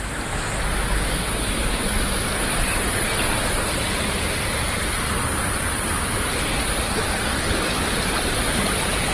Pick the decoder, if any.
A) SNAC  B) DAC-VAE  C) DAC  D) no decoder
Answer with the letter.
D